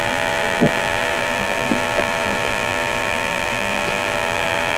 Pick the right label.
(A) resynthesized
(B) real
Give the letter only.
A